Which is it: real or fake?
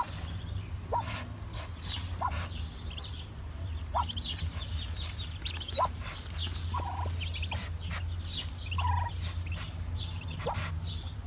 real